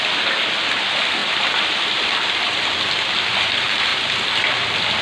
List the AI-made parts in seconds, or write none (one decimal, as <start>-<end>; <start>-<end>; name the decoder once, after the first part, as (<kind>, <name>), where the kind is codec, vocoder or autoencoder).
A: 1.2-2.3 (vocoder, BigVGAN v2)